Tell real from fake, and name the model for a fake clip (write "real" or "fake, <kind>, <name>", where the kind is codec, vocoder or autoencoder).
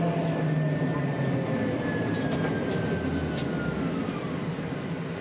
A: real